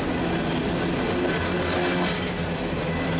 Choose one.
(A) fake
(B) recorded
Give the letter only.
B